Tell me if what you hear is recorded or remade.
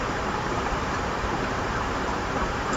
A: remade